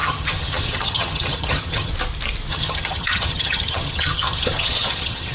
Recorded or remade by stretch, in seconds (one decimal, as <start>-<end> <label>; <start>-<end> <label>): 0.0-1.9 remade; 1.9-2.5 recorded; 2.5-5.3 remade